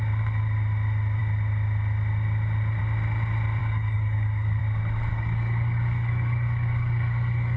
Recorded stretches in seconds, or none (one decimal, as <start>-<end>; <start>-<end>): 0.0-3.6; 4.6-5.1